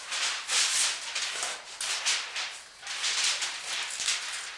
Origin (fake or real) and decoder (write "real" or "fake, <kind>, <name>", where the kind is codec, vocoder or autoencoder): real